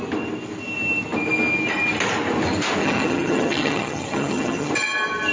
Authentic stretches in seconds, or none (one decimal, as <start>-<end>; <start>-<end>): 0.0-2.8; 4.7-5.3